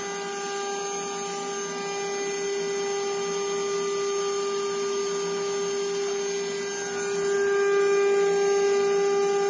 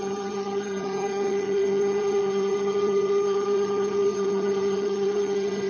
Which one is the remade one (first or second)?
second